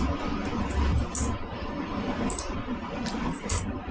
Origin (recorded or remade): recorded